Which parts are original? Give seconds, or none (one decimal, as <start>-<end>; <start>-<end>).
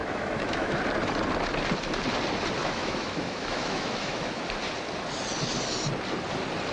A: 0.8-2.6; 4.4-6.7